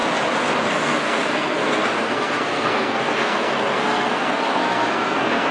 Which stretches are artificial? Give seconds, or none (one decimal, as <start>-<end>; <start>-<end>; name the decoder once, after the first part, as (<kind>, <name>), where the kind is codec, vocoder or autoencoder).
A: 0.6-5.5 (codec, SNAC)